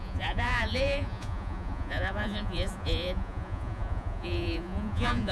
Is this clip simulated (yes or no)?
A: yes